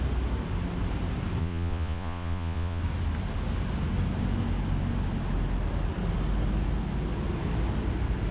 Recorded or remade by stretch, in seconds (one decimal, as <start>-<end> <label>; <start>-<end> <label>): 0.0-1.4 recorded; 1.4-2.8 remade; 2.8-8.3 recorded